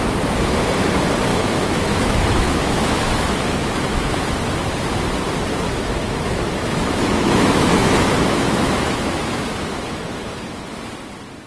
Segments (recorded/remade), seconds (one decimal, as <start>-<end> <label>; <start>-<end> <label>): 0.0-1.3 recorded; 1.3-4.3 remade; 4.3-5.5 recorded; 5.5-10.6 remade; 10.6-11.5 recorded